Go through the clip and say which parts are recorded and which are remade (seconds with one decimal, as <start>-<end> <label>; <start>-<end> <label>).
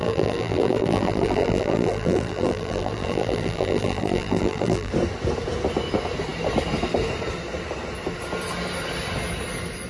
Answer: 0.0-4.9 remade; 4.9-9.9 recorded